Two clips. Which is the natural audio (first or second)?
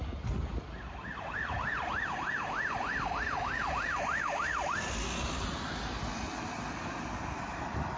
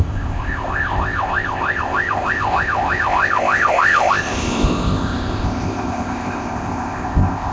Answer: first